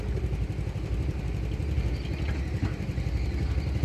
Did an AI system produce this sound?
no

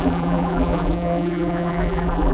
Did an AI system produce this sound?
yes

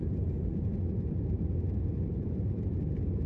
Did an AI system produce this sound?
yes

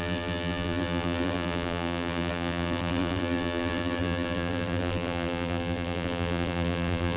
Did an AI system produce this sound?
yes